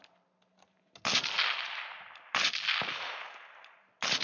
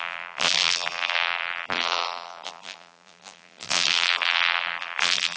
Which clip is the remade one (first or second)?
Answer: second